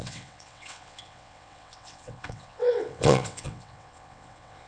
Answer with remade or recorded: remade